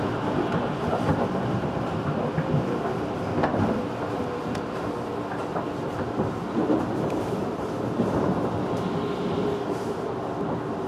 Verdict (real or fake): real